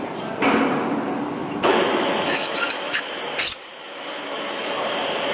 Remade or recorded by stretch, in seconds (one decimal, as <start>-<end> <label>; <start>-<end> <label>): 0.0-1.4 recorded; 1.4-3.1 remade; 3.1-3.7 recorded; 3.7-4.6 remade; 4.6-5.3 recorded